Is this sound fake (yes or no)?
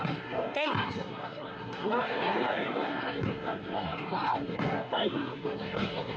yes